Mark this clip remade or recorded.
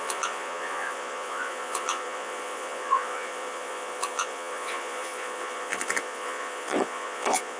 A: remade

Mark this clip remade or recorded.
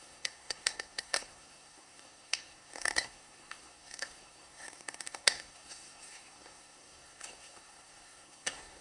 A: remade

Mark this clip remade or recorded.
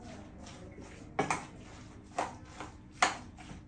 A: recorded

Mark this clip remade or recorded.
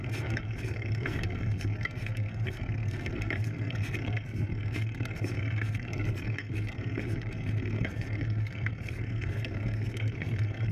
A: remade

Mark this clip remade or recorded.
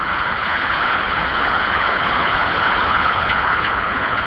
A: remade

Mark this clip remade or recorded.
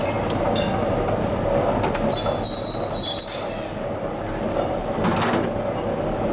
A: recorded